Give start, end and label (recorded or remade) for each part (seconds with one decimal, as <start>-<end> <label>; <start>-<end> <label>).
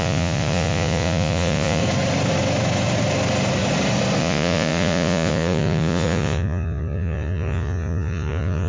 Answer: 0.0-1.8 remade; 1.8-4.2 recorded; 4.2-8.7 remade